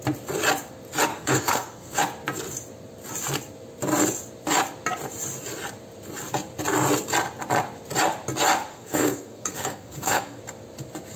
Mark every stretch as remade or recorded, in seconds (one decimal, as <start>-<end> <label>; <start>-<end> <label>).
0.0-1.1 recorded; 1.1-2.0 remade; 2.0-8.7 recorded; 8.7-10.4 remade; 10.4-11.2 recorded